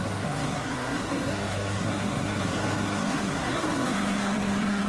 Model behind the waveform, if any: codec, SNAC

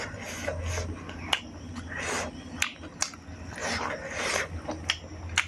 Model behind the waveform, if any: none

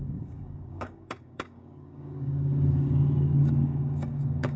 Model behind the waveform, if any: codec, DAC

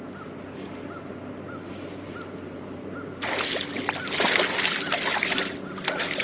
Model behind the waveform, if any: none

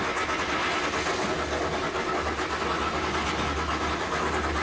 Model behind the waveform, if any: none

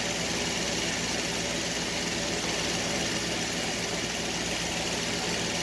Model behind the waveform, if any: none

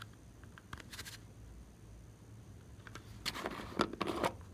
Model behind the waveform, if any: none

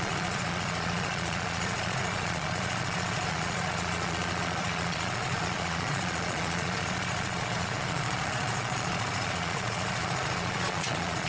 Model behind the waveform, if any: vocoder, Vocos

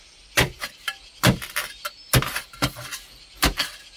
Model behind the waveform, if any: none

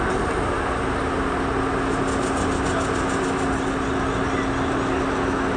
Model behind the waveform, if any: none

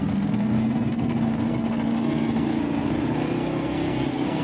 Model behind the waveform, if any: codec, SNAC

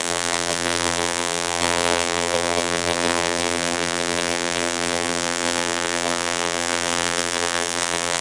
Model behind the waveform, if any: vocoder, BigVGAN v2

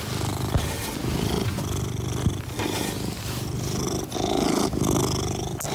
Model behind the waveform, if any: none